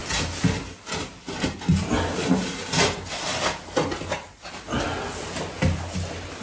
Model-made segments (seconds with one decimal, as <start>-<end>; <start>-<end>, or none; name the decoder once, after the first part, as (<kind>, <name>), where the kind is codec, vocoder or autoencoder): none